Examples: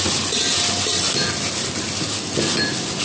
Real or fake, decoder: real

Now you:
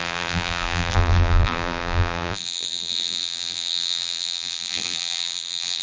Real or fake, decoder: fake, vocoder, BigVGAN v2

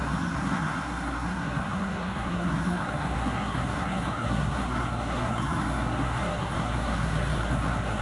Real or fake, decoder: fake, codec, SNAC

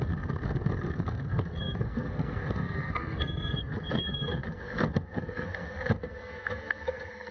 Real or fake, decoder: fake, codec, SNAC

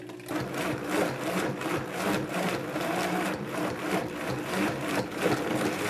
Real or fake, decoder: real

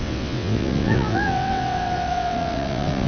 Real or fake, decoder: fake, vocoder, WaveNeXt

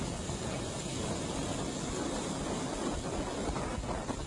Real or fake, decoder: real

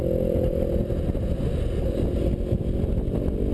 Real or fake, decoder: real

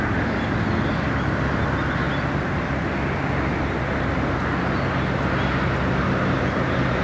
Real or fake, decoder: real